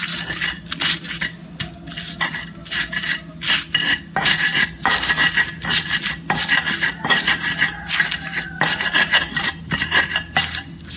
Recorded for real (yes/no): yes